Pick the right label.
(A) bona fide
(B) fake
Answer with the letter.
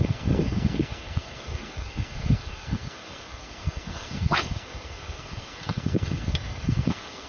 B